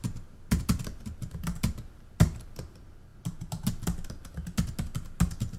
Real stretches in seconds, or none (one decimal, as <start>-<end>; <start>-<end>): 0.0-5.6